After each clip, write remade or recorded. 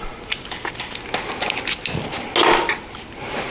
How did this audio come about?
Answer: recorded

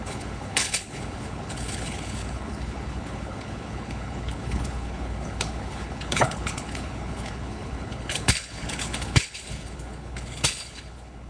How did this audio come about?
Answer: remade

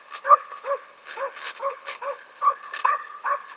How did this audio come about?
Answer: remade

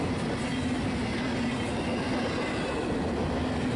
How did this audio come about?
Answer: recorded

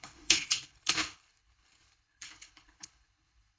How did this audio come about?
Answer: remade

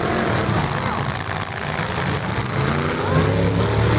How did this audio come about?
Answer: recorded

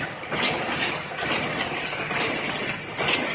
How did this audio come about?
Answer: recorded